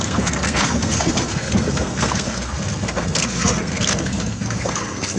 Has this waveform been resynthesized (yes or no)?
yes